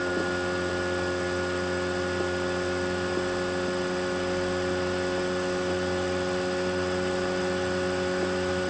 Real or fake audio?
real